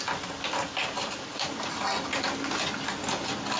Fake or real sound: real